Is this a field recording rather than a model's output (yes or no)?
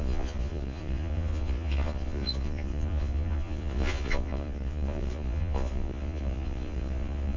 no